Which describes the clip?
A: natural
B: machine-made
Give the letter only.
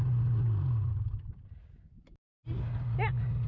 A